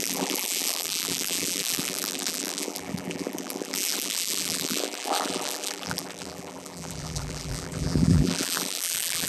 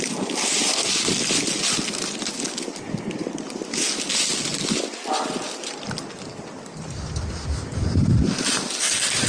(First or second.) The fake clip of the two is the first